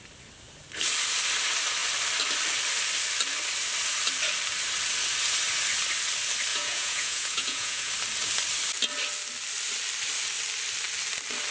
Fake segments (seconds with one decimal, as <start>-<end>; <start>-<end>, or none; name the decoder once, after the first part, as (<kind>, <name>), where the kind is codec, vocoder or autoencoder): 6.5-7.9 (vocoder, Vocos)